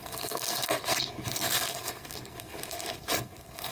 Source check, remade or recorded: remade